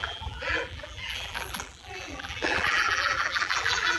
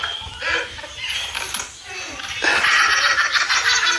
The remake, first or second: first